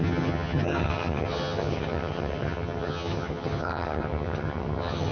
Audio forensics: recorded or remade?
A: remade